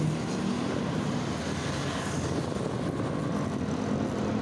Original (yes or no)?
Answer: yes